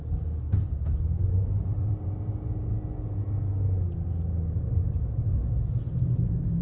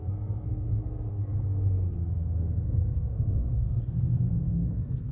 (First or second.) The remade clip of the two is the second